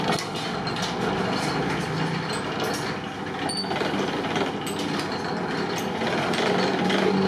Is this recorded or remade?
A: recorded